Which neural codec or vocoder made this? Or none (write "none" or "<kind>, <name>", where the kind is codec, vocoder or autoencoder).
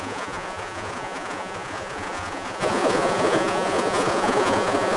vocoder, Vocos